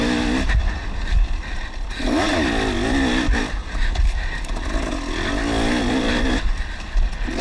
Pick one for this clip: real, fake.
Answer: real